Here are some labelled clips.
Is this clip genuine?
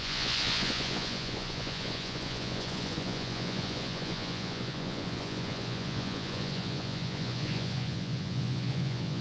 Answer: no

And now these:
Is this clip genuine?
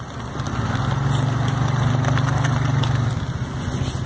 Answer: yes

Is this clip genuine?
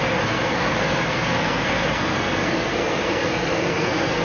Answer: no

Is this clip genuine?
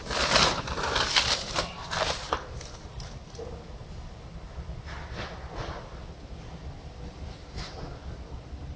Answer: yes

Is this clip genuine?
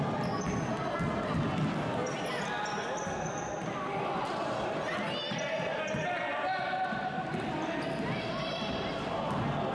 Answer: yes